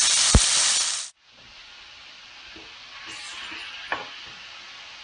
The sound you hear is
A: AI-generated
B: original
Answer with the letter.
B